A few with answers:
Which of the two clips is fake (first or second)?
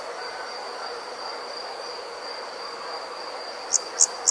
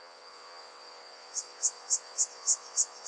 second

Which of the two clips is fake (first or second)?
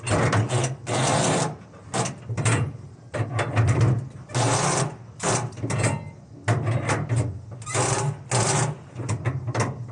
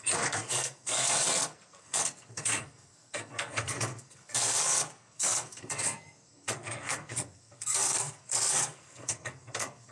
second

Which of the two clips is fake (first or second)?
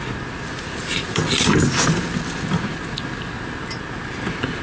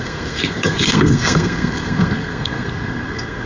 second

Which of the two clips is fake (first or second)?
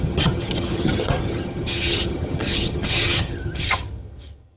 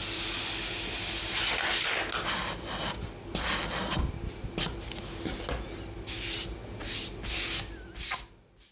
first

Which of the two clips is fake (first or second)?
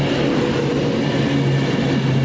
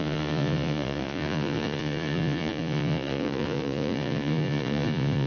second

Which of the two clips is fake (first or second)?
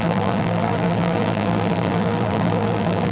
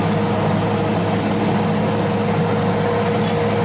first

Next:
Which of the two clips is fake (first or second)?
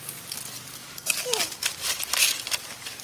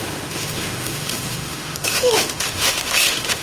second